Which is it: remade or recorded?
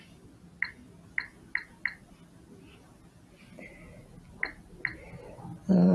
recorded